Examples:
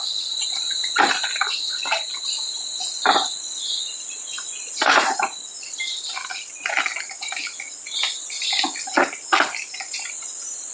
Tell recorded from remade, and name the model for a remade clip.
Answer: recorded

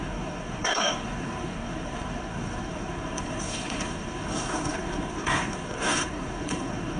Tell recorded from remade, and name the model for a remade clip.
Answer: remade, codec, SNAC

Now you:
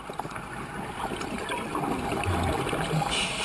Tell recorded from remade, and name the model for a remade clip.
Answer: recorded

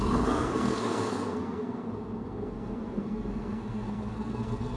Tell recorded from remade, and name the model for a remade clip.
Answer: remade, codec, SNAC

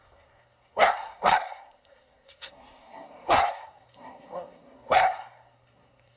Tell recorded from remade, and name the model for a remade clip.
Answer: remade, codec, SNAC